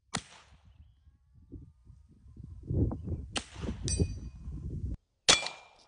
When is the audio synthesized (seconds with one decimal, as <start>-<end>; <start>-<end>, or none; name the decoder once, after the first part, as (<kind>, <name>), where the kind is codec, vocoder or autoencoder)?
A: none